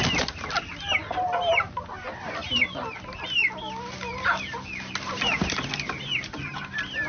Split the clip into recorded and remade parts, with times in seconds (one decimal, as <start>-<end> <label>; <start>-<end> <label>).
0.0-7.1 recorded